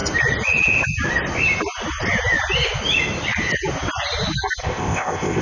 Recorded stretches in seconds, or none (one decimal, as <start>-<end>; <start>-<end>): 0.0-4.6